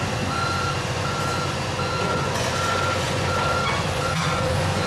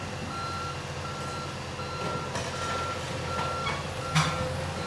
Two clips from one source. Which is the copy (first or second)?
first